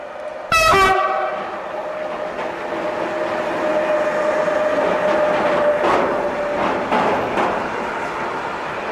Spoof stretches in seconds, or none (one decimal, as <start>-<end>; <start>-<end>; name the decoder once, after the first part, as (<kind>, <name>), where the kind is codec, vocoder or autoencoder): none

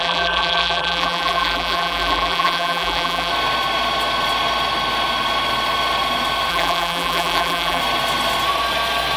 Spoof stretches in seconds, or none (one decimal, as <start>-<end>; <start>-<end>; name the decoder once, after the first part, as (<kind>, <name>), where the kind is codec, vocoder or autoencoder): 0.0-3.3 (vocoder, BigVGAN v2); 6.5-7.8

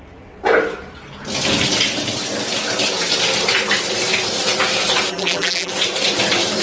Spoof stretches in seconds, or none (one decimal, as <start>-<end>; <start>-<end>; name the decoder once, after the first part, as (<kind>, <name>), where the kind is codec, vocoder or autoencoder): 5.1-5.7 (vocoder, BigVGAN v2)

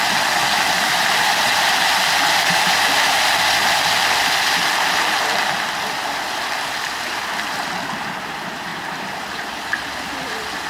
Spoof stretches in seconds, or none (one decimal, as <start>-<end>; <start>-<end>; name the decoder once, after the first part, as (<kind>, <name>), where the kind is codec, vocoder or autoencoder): 8.7-10.7 (vocoder, BigVGAN v2)

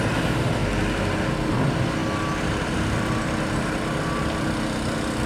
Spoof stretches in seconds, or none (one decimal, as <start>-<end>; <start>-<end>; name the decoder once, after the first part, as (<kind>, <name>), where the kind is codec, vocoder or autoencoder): 0.0-0.6 (vocoder, BigVGAN v2); 1.5-2.0; 2.6-5.3

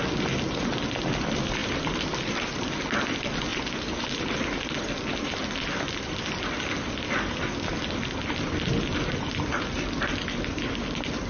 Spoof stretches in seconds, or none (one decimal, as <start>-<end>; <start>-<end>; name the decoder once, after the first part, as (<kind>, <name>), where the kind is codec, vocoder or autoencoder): 1.6-2.7 (vocoder, BigVGAN v2)

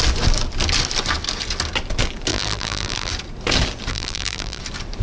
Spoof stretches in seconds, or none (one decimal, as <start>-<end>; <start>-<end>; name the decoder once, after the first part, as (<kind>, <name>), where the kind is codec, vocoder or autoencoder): 2.3-3.1 (vocoder, BigVGAN v2); 3.9-4.6

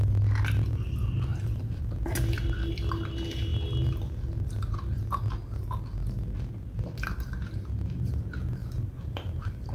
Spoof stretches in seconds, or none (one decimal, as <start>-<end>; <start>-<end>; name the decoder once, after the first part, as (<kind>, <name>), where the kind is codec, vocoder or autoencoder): 1.3-1.8 (vocoder, BigVGAN v2); 8.6-9.7